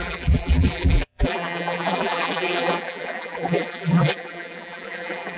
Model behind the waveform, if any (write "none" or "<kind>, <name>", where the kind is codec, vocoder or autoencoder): vocoder, BigVGAN v2